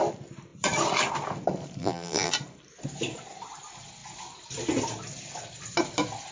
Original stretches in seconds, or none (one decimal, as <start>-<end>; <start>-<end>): 0.0-1.8; 2.3-6.3